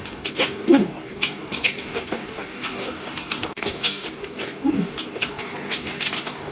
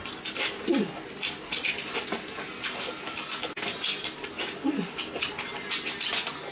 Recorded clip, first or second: second